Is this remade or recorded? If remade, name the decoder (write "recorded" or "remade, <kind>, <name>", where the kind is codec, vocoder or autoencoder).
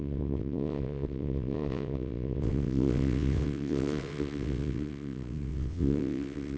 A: remade, vocoder, WaveNeXt